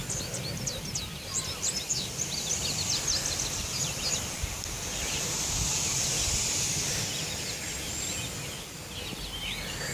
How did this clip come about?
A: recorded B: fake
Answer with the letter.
A